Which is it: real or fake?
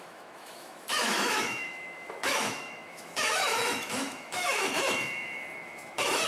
fake